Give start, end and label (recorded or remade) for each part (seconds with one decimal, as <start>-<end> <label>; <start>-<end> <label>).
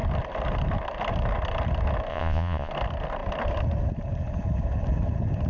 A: 0.0-2.1 recorded; 2.1-2.7 remade; 2.7-5.5 recorded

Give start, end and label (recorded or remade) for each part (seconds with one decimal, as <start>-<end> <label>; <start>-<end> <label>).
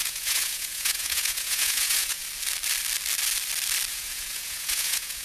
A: 0.0-2.2 remade; 2.2-3.9 recorded; 3.9-5.2 remade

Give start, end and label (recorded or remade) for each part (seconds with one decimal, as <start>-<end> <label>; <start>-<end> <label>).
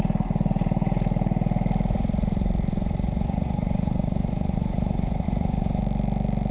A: 0.0-1.9 recorded; 1.9-5.8 remade; 5.8-6.5 recorded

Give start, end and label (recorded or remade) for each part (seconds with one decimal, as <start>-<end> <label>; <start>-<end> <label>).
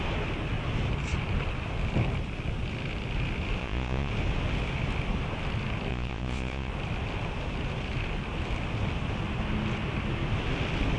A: 0.0-3.6 recorded; 3.6-4.1 remade; 4.1-5.9 recorded; 5.9-6.7 remade; 6.7-11.0 recorded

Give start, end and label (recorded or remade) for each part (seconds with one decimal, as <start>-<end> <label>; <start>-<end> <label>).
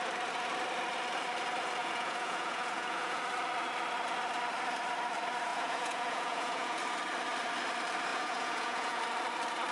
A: 0.0-1.8 recorded; 1.8-3.2 remade; 3.2-5.5 recorded; 5.5-6.8 remade; 6.8-8.1 recorded; 8.1-9.0 remade; 9.0-9.7 recorded